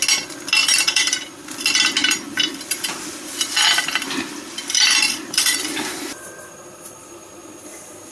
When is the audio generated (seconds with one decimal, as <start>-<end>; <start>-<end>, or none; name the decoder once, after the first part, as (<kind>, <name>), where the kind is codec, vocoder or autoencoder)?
0.6-1.5 (vocoder, BigVGAN v2); 2.0-6.5